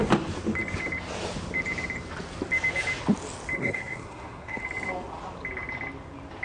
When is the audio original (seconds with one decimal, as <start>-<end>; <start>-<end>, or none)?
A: 0.0-3.6; 4.6-6.4